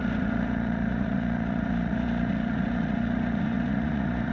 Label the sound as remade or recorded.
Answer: remade